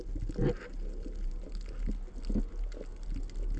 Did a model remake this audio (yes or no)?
no